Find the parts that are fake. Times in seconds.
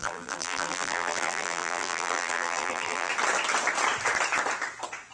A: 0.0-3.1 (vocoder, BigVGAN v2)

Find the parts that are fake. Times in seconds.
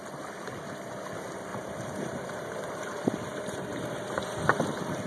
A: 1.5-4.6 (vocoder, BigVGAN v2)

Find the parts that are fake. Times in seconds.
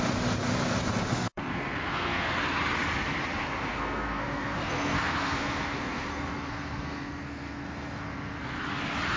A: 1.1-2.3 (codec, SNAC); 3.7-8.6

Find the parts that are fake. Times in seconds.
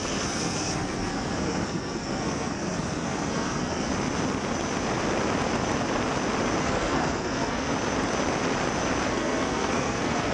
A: 0.0-3.9 (codec, SNAC); 6.6-7.7; 9.1-10.3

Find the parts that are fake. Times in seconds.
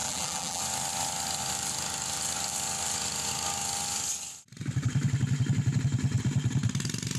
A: 0.0-0.6 (vocoder, BigVGAN v2)